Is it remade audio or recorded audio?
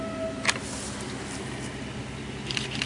recorded